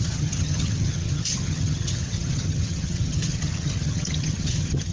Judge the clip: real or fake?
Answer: fake